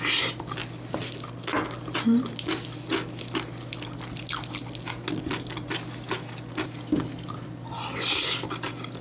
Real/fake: real